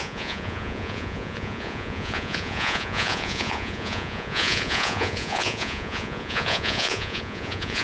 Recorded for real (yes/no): no